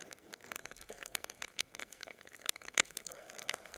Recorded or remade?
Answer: remade